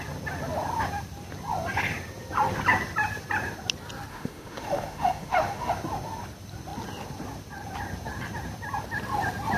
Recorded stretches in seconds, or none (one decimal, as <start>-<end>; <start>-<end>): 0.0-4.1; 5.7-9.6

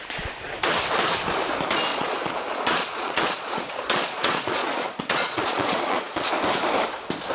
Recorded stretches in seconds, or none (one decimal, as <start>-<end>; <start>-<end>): 0.0-1.9; 6.3-7.3

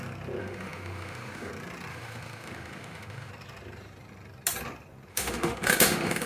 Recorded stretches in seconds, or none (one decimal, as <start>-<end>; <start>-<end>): 0.0-0.4; 1.5-1.9; 3.3-5.1

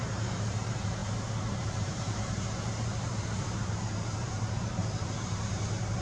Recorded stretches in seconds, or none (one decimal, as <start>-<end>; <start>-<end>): none